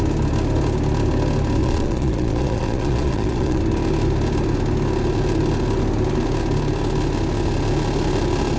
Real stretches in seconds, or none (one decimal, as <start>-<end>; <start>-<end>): 0.0-1.6; 3.6-8.6